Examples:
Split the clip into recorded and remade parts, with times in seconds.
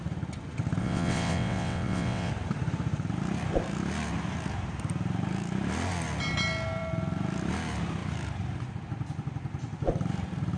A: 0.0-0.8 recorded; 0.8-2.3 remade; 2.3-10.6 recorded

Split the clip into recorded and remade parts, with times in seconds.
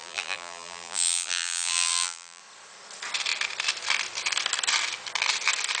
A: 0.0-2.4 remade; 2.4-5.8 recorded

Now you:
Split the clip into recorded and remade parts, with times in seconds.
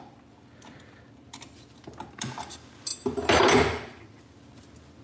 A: 0.0-5.0 recorded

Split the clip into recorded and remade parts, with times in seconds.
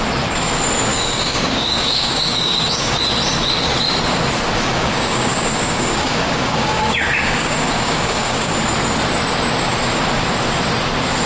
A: 0.0-0.9 recorded; 0.9-3.0 remade; 3.0-4.7 recorded; 4.7-8.5 remade; 8.5-11.3 recorded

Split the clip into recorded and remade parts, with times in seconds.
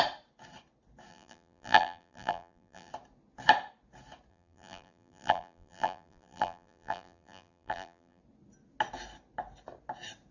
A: 0.0-1.1 recorded; 1.1-2.9 remade; 2.9-4.3 recorded; 4.3-8.2 remade; 8.2-10.3 recorded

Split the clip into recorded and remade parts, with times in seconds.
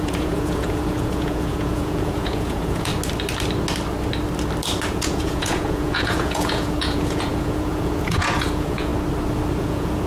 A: 0.0-2.9 remade; 2.9-4.9 recorded; 4.9-8.9 remade; 8.9-9.6 recorded; 9.6-10.1 remade